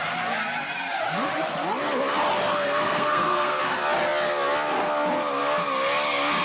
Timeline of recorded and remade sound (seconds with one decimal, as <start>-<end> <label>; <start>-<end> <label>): 0.0-2.5 recorded; 2.5-3.6 remade; 3.6-6.4 recorded